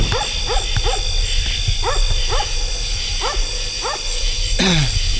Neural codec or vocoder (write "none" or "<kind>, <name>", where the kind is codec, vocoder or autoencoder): none